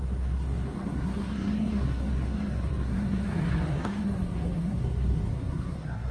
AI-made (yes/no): yes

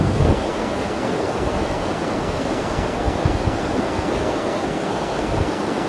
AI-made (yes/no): yes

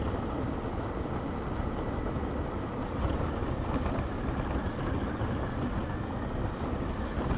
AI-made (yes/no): no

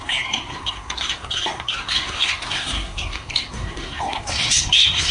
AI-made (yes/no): yes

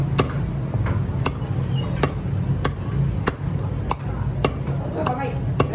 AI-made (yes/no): no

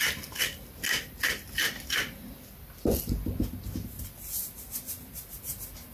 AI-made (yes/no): no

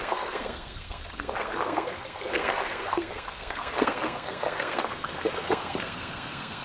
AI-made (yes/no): yes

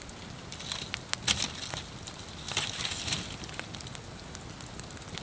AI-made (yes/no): no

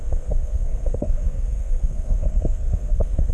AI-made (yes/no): yes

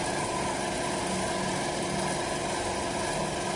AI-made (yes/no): no